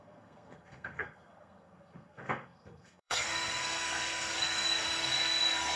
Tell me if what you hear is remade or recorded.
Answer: remade